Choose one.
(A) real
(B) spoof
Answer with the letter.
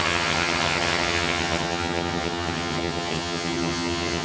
B